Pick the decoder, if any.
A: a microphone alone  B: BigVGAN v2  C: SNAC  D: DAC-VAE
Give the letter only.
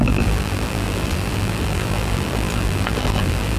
B